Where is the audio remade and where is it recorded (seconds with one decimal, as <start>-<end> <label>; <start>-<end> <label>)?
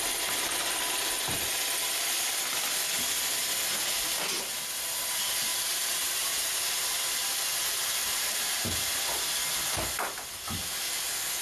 0.0-5.5 recorded; 5.5-6.8 remade; 6.8-7.5 recorded; 7.5-9.0 remade; 9.0-11.4 recorded